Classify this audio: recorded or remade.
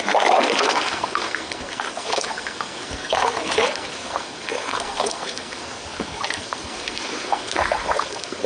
remade